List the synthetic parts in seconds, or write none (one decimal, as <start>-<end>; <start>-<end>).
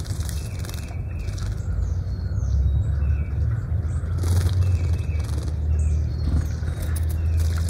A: none